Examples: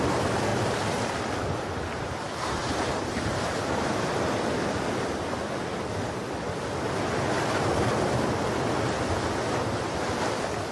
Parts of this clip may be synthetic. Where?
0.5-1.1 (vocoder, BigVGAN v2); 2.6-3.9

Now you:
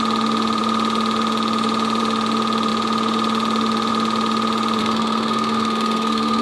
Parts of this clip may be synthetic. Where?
4.8-6.4 (codec, SNAC)